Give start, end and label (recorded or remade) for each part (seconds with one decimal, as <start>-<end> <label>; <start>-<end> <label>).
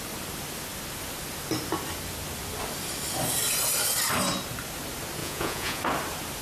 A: 0.0-5.2 recorded; 5.2-5.8 remade; 5.8-6.4 recorded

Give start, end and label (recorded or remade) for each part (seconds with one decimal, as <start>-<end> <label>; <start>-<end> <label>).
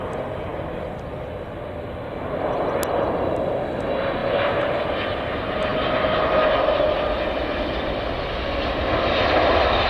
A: 0.0-4.2 recorded; 4.2-4.8 remade; 4.8-9.9 recorded